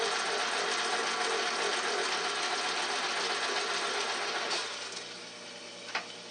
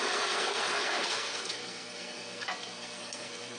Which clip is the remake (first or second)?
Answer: second